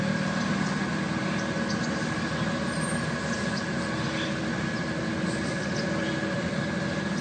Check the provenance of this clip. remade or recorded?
recorded